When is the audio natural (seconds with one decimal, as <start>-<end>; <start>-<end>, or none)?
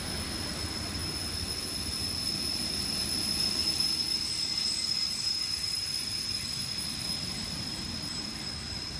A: 0.0-9.0